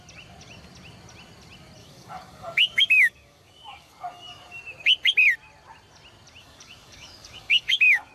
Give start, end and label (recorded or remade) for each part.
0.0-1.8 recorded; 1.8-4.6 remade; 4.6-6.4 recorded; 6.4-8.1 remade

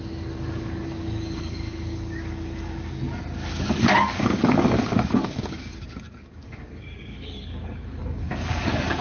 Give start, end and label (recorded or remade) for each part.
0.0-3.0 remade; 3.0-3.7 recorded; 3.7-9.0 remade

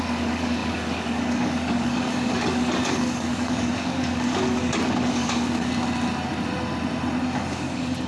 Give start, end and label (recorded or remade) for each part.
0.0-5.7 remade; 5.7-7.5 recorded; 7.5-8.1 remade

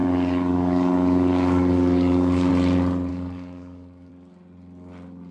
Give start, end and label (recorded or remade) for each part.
0.0-2.5 remade; 2.5-3.1 recorded; 3.1-4.1 remade; 4.1-5.3 recorded

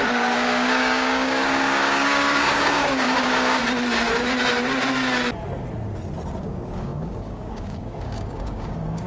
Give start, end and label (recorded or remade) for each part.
0.0-3.6 remade; 3.6-6.4 recorded; 6.4-9.1 remade

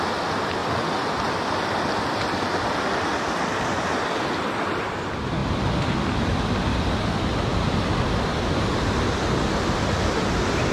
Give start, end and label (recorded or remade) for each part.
0.0-10.7 recorded